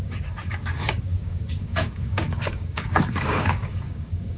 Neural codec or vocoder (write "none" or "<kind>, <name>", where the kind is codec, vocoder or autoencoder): codec, DAC